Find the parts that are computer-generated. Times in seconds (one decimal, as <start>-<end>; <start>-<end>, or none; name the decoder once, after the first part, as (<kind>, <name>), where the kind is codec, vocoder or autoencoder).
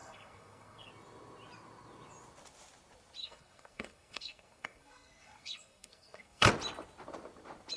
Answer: 0.0-0.9 (codec, SNAC); 3.2-6.5